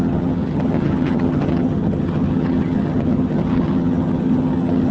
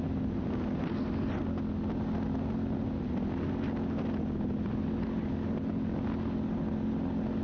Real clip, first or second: second